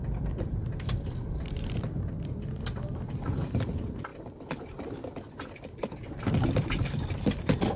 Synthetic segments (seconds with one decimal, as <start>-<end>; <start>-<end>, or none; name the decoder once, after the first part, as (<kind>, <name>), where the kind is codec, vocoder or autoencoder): 0.0-7.8 (vocoder, BigVGAN v2)